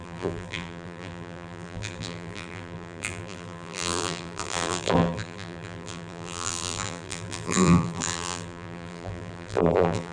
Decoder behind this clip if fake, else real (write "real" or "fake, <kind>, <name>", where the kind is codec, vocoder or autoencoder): fake, vocoder, BigVGAN v2